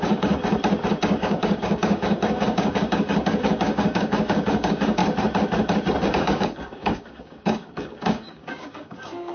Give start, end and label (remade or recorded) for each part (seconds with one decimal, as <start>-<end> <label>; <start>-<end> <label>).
0.0-0.4 remade; 0.4-0.9 recorded; 0.9-5.0 remade; 5.0-6.1 recorded; 6.1-9.3 remade